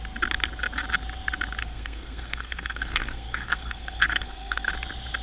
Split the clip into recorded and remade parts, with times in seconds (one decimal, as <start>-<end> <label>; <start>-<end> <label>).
0.0-1.6 recorded; 1.6-4.7 remade; 4.7-5.2 recorded